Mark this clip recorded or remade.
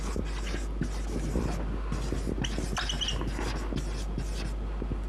recorded